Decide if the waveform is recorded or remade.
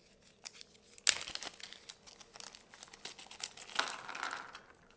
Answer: recorded